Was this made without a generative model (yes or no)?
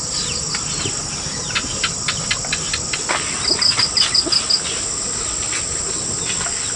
yes